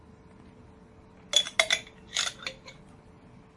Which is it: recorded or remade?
recorded